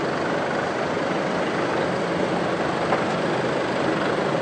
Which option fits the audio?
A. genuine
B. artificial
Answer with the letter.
A